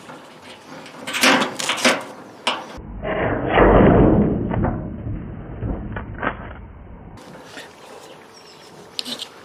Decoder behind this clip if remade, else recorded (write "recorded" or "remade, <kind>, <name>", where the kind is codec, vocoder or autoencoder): recorded